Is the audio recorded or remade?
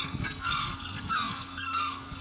remade